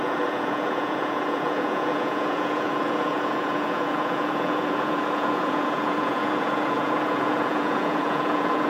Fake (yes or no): yes